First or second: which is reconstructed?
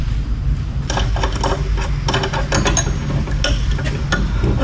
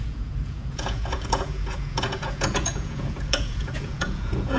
second